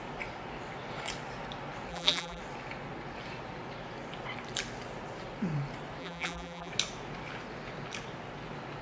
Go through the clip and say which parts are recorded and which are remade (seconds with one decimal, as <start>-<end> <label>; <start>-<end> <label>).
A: 0.0-1.9 recorded; 1.9-2.4 remade; 2.4-6.0 recorded; 6.0-6.7 remade; 6.7-8.8 recorded